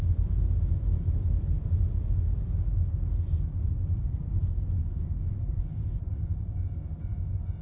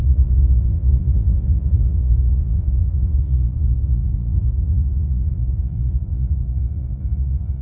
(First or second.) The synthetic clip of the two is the second